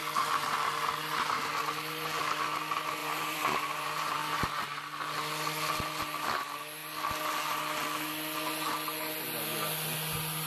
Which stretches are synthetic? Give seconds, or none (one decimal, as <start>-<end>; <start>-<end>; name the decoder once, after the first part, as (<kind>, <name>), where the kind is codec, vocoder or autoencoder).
3.0-4.5 (vocoder, BigVGAN v2)